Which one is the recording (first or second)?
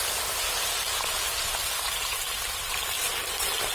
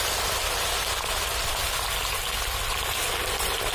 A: second